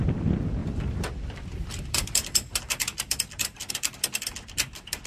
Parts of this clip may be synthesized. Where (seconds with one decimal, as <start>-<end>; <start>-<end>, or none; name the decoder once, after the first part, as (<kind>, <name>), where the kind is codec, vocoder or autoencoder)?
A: 0.6-3.7 (vocoder, BigVGAN v2)

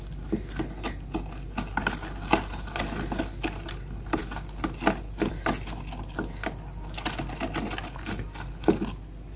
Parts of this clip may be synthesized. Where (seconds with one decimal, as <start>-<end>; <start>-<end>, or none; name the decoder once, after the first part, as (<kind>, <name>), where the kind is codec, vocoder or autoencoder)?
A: none

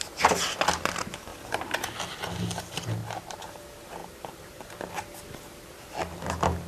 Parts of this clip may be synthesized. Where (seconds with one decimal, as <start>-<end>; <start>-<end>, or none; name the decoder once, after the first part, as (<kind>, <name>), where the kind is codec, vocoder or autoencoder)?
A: 3.0-3.6 (vocoder, BigVGAN v2); 4.0-4.7

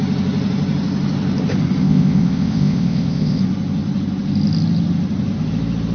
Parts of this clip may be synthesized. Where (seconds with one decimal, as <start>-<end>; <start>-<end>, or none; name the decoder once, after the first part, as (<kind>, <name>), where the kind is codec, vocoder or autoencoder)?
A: 1.8-3.4 (codec, ZipCodec)

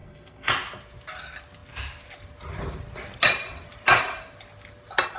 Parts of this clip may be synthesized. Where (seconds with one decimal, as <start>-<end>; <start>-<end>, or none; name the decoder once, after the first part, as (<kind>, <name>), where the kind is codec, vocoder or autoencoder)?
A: 0.0-0.5 (codec, SNAC)

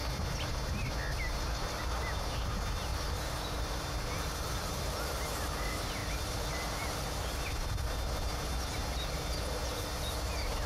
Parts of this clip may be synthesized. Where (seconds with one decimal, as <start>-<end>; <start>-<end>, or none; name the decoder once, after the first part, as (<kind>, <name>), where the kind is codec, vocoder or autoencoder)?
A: 2.9-3.6 (vocoder, BigVGAN v2); 6.0-7.3

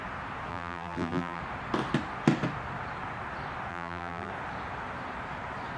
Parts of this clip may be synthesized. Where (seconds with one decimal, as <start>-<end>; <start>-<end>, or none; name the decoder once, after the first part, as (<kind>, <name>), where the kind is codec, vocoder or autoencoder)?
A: 0.5-1.4 (vocoder, BigVGAN v2); 3.7-4.3

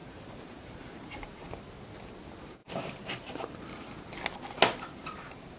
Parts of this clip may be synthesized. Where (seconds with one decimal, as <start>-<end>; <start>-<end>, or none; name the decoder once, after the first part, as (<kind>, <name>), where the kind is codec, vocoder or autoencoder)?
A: 0.0-1.5 (vocoder, BigVGAN v2); 2.6-3.9